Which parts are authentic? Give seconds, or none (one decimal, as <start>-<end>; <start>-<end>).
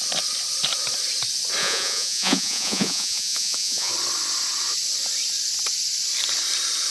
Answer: 0.0-1.6; 3.9-6.9